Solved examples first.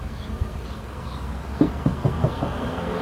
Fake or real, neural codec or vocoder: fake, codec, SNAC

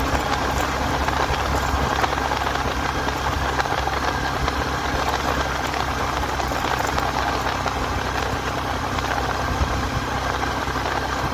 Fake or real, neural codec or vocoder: real